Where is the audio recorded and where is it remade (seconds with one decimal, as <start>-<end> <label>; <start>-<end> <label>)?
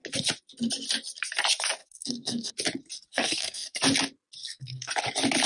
0.0-1.8 recorded; 1.8-2.5 remade; 2.5-3.1 recorded; 3.1-3.8 remade; 3.8-4.4 recorded; 4.4-4.9 remade; 4.9-5.5 recorded